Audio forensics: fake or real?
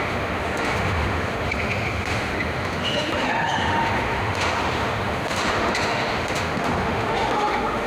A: fake